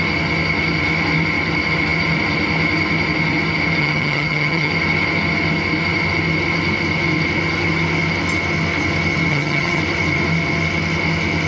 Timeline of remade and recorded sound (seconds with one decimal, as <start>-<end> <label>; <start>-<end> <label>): 0.0-3.8 recorded; 3.8-4.7 remade; 4.7-9.3 recorded; 9.3-9.8 remade; 9.8-11.5 recorded